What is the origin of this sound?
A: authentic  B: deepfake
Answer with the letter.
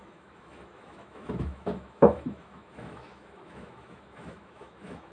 B